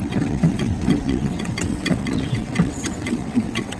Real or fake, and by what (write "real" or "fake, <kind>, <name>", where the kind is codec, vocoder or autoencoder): fake, vocoder, WaveNeXt